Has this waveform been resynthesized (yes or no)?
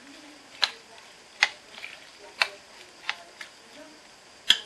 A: no